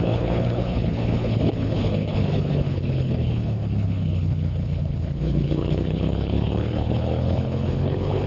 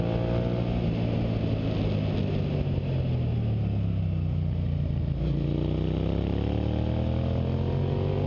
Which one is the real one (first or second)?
second